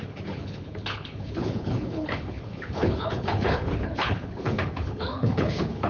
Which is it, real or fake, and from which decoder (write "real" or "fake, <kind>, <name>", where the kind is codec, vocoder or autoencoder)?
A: fake, codec, HILCodec